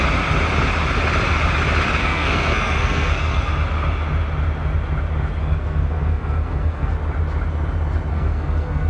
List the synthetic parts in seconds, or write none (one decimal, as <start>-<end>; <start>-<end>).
2.0-3.5; 5.4-6.9; 8.1-8.9